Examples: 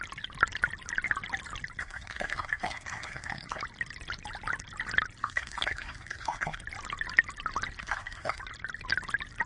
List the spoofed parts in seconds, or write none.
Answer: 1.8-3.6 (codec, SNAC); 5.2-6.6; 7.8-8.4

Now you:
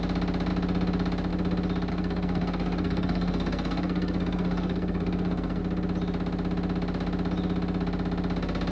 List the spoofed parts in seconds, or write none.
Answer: 1.9-5.6 (codec, SNAC)

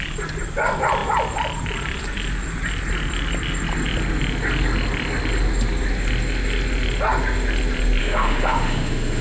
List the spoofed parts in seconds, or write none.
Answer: 8.0-9.2 (autoencoder, DAC-VAE)

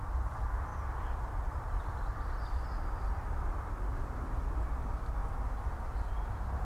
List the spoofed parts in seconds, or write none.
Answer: 0.7-2.8 (vocoder, BigVGAN v2); 3.9-4.7

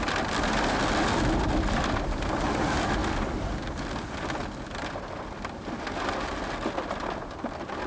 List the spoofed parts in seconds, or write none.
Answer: none

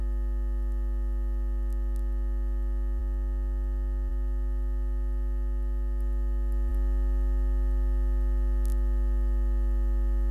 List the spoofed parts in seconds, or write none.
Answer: none

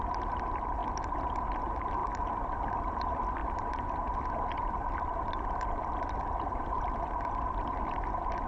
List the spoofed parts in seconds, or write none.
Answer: 0.8-1.6 (vocoder, BigVGAN v2); 2.0-3.0; 3.4-7.7